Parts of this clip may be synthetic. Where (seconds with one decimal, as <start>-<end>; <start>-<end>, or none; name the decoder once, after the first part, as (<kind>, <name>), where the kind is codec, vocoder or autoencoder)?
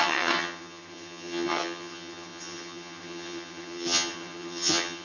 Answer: 0.0-5.0 (vocoder, HiFi-GAN)